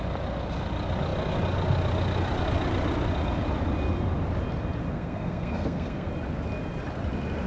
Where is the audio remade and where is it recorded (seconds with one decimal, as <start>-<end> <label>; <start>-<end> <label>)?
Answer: 0.0-4.9 recorded; 4.9-6.1 remade; 6.1-7.5 recorded